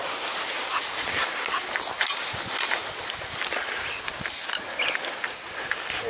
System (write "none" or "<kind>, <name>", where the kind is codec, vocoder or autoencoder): none